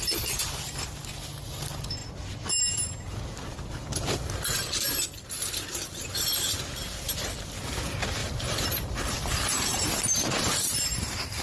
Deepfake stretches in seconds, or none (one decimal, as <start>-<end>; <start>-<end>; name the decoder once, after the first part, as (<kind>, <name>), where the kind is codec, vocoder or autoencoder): 8.2-11.4 (vocoder, BigVGAN v2)